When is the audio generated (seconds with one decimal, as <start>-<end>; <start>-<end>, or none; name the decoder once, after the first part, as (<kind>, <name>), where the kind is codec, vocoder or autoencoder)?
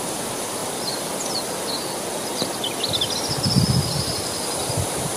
none